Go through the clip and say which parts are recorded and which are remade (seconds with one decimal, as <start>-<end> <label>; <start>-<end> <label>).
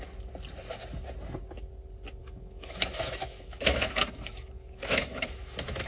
0.0-2.2 recorded; 2.2-5.9 remade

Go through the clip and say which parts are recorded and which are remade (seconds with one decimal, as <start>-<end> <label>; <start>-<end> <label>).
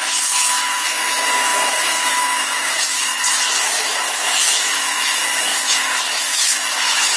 0.0-3.1 remade; 3.1-3.6 recorded; 3.6-7.2 remade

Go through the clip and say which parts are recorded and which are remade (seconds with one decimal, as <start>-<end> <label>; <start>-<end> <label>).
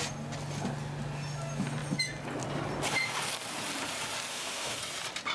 0.0-4.3 recorded; 4.3-4.8 remade; 4.8-5.3 recorded